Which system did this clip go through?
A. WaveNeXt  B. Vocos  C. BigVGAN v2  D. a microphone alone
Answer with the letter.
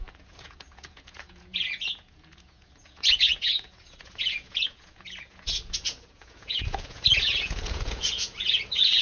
B